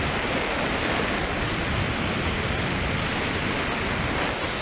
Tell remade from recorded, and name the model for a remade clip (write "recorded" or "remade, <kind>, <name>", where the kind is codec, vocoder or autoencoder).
recorded